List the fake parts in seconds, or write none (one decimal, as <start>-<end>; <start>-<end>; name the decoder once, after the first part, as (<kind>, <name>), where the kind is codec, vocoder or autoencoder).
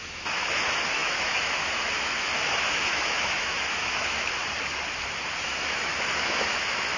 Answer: 0.0-4.4 (autoencoder, DAC-VAE); 5.4-7.0